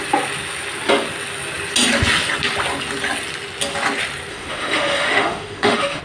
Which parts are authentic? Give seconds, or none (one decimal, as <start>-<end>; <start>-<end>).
0.0-4.3